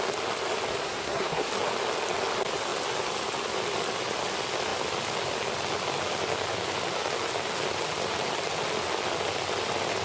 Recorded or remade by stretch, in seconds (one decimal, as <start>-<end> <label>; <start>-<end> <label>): 0.0-0.8 recorded; 0.8-1.5 remade; 1.5-10.0 recorded